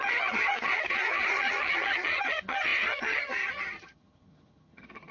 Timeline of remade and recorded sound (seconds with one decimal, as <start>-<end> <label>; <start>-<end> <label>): 0.0-5.1 remade